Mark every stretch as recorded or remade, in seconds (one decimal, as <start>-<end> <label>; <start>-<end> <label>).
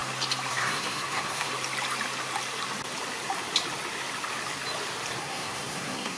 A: 0.0-0.5 recorded; 0.5-1.5 remade; 1.5-5.2 recorded; 5.2-6.2 remade